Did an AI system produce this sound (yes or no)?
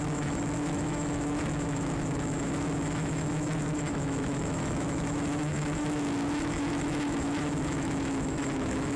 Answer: yes